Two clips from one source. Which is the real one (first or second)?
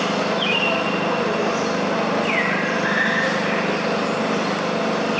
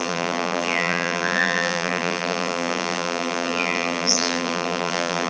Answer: first